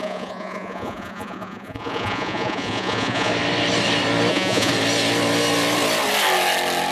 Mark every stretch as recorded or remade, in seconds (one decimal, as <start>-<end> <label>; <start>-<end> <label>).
0.0-3.3 remade; 3.3-4.3 recorded; 4.3-4.7 remade; 4.7-6.9 recorded